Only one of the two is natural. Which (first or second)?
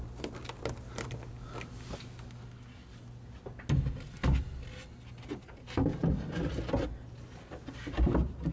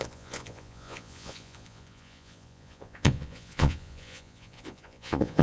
first